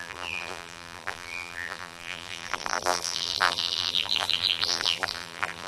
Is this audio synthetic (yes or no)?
yes